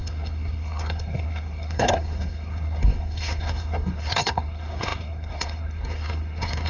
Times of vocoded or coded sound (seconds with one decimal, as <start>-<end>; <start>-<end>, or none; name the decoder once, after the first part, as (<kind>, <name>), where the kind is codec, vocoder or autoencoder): 0.0-6.7 (codec, SNAC)